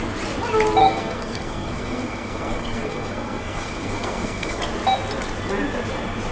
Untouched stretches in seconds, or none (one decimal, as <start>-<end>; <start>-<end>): 0.0-0.8; 4.6-6.3